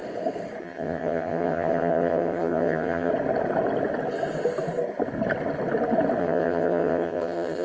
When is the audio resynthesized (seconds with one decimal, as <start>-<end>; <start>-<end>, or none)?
0.6-3.1; 6.2-7.6